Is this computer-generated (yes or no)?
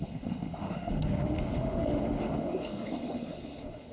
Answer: yes